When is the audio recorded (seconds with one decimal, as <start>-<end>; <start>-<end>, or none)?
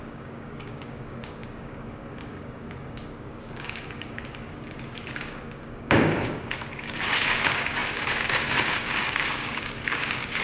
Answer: none